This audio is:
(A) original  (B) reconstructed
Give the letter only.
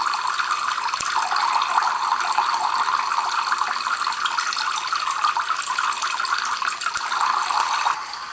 A